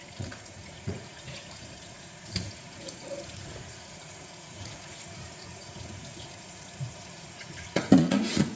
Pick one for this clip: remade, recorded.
remade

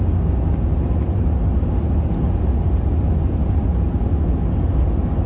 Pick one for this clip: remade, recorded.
recorded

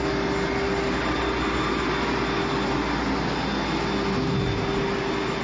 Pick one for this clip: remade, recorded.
recorded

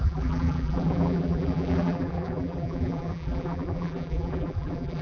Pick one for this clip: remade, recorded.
remade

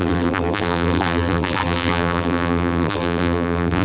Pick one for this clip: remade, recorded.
remade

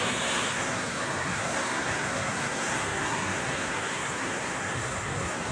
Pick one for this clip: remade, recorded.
remade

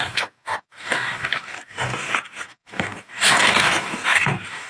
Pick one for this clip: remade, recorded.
remade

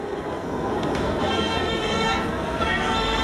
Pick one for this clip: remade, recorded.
remade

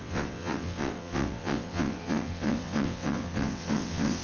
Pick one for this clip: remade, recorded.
remade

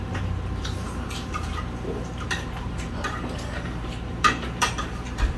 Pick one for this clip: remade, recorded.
remade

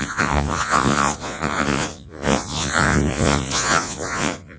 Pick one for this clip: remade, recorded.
remade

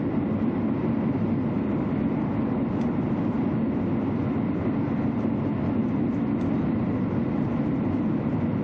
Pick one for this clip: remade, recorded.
recorded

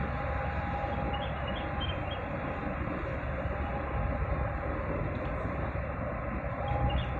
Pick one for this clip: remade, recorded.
recorded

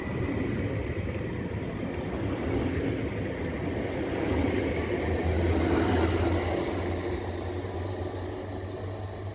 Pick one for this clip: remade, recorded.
recorded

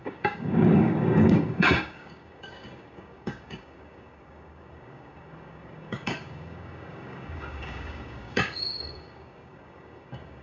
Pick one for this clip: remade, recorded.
remade